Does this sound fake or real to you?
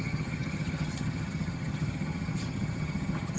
fake